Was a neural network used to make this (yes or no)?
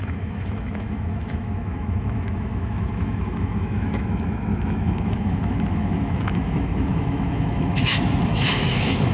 yes